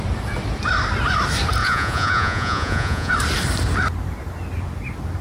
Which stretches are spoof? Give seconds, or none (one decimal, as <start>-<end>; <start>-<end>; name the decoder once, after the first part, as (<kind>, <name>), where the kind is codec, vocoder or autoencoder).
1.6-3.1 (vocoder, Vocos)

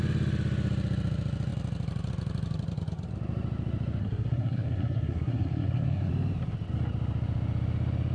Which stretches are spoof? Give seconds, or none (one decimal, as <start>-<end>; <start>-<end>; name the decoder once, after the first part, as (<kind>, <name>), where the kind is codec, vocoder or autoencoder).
4.0-6.1 (codec, SNAC)

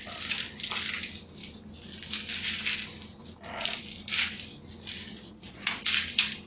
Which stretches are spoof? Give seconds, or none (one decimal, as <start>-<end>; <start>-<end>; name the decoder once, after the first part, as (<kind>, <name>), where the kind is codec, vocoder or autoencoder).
5.1-5.8 (vocoder, Vocos)

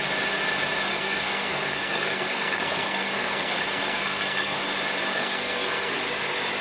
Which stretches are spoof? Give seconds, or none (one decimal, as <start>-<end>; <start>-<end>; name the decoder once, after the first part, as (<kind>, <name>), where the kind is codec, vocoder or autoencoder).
0.9-4.6 (codec, SNAC); 5.1-5.9

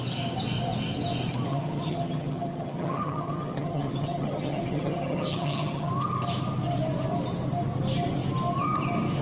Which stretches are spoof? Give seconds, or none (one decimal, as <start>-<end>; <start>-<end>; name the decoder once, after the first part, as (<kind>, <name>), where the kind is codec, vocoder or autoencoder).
1.5-5.9 (vocoder, HiFi-GAN)

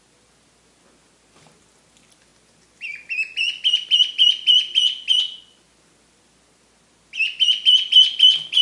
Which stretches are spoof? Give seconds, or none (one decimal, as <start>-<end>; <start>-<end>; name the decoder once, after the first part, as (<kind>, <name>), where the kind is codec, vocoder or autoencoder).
none

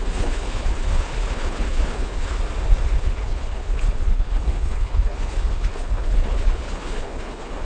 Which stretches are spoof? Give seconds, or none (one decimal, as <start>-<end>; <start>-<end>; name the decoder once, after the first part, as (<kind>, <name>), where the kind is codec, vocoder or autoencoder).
0.0-2.4 (codec, HILCodec); 3.0-7.7

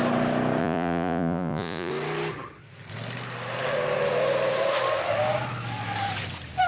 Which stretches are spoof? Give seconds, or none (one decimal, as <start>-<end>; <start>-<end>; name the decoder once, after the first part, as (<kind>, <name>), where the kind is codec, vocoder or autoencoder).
0.6-1.9 (vocoder, Vocos)